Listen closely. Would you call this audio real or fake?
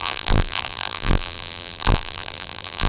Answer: fake